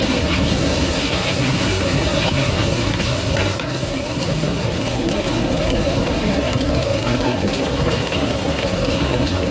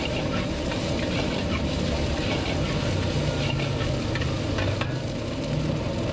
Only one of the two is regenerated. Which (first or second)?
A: first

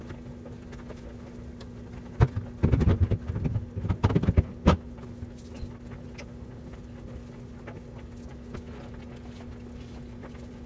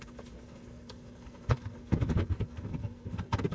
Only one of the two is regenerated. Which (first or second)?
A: second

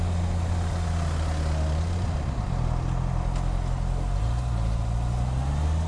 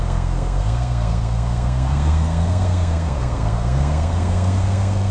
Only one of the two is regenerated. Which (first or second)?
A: second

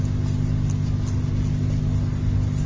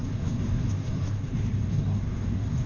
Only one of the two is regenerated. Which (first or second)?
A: second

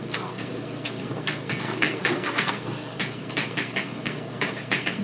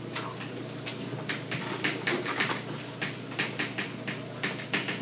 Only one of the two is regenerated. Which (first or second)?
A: first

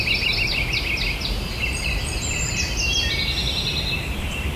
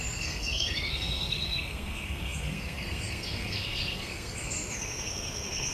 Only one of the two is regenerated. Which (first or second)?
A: second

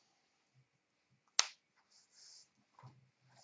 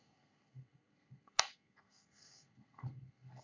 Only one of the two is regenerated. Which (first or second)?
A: second